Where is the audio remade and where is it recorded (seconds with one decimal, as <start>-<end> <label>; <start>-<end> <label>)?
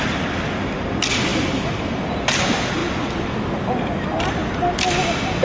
0.0-5.4 recorded